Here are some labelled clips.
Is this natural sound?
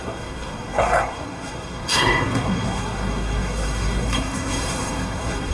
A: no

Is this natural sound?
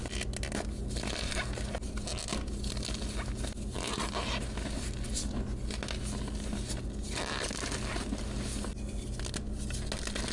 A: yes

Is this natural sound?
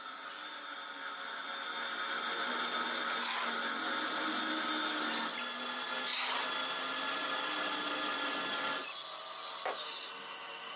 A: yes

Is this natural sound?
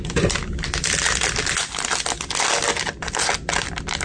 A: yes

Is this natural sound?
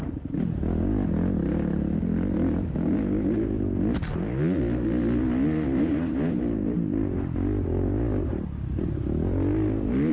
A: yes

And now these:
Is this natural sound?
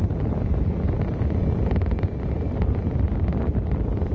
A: yes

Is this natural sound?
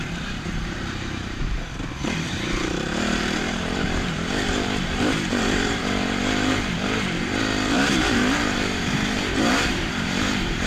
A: no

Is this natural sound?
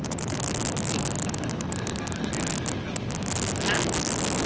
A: yes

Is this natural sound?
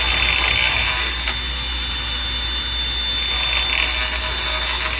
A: yes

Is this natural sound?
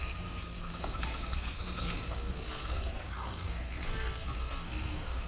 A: no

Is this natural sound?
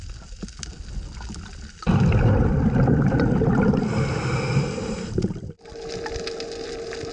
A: yes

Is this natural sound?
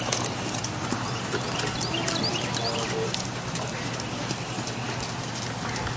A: yes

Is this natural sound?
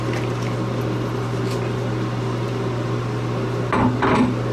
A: yes